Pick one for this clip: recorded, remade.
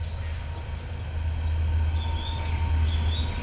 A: recorded